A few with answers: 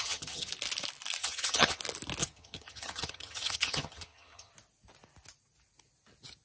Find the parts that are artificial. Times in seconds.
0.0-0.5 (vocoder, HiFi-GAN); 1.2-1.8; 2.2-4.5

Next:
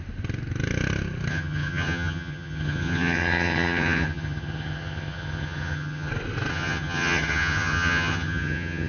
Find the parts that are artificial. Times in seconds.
1.3-6.1 (vocoder, HiFi-GAN); 6.5-8.9

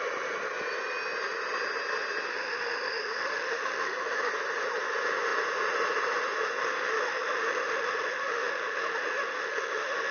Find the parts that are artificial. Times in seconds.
2.3-4.3 (autoencoder, DAC-VAE); 6.6-10.1

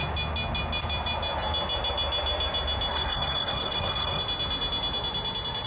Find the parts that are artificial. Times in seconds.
2.9-4.2 (codec, SNAC)

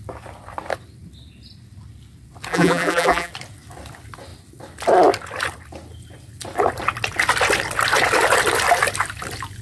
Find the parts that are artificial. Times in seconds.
2.5-3.3 (vocoder, BigVGAN v2)

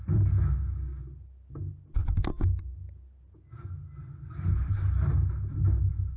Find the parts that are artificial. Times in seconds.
none